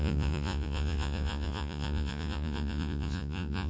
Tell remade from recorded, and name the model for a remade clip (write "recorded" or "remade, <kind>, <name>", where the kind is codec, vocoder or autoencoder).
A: remade, vocoder, Vocos